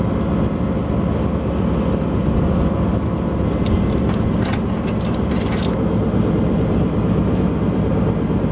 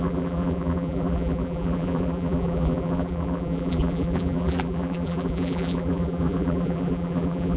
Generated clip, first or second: second